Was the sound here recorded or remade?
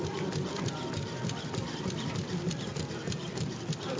recorded